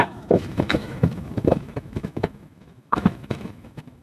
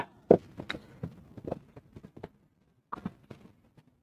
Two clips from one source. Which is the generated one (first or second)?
first